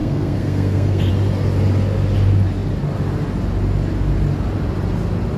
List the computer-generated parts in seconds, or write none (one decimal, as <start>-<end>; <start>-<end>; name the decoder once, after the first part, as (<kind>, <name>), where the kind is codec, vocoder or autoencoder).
0.0-1.1 (codec, SNAC)

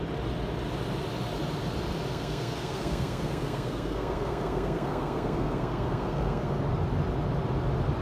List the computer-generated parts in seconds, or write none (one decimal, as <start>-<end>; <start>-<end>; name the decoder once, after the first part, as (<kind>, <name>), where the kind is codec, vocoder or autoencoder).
2.1-6.6 (codec, SNAC)

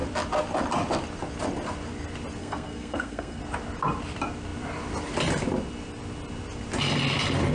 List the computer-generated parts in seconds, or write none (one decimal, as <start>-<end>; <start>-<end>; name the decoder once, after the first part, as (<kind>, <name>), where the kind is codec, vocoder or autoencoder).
2.4-3.4 (codec, SNAC)

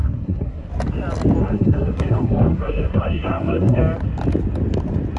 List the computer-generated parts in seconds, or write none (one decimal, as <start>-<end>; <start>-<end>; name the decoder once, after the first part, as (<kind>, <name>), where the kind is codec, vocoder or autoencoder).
0.0-0.7 (codec, SNAC); 1.4-3.8

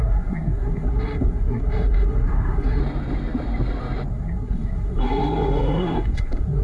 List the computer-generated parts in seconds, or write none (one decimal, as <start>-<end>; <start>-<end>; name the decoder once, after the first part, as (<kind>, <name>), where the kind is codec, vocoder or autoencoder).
0.0-2.8 (codec, SNAC); 4.1-6.6

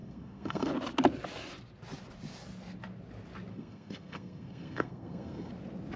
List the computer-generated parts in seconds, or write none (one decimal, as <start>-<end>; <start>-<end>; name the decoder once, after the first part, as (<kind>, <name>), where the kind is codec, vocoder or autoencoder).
0.0-0.7 (codec, SNAC); 3.5-5.5

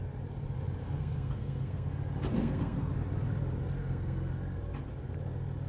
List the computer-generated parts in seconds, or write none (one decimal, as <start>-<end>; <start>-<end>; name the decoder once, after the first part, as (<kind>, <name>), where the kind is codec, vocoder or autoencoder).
0.8-1.9 (codec, SNAC); 2.4-2.9; 3.8-4.3

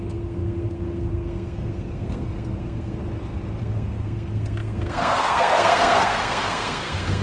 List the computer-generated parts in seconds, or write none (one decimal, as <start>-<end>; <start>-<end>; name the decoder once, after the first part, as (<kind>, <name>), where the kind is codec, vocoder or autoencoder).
0.0-3.0 (codec, SNAC); 3.6-7.2